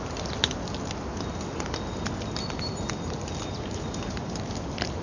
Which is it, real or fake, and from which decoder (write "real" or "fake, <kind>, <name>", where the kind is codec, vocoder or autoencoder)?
real